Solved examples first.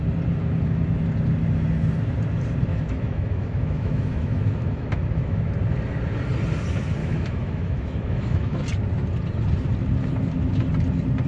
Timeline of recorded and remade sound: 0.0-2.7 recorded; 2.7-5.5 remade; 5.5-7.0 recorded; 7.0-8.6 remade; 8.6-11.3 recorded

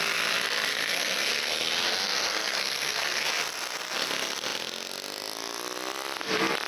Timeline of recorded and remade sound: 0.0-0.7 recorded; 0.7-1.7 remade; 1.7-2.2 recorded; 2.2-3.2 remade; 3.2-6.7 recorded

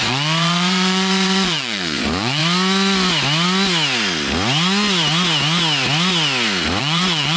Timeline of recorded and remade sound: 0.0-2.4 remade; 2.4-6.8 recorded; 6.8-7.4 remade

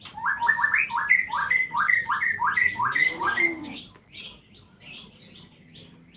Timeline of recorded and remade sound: 0.0-1.4 recorded; 1.4-2.1 remade; 2.1-3.0 recorded; 3.0-3.8 remade; 3.8-6.2 recorded

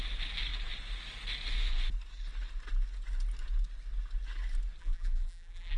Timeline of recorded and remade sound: 0.0-4.8 recorded; 4.8-5.8 remade

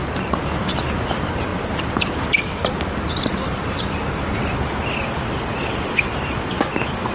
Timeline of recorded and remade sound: 0.0-7.1 recorded

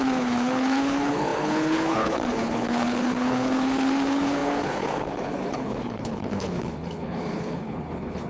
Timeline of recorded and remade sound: 0.0-8.3 remade

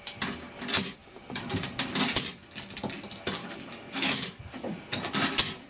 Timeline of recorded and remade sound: 0.0-3.4 recorded; 3.4-4.4 remade; 4.4-5.7 recorded